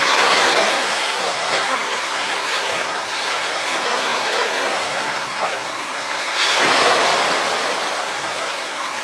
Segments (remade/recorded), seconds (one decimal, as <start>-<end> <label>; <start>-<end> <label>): 0.0-7.0 remade; 7.0-8.0 recorded; 8.0-9.0 remade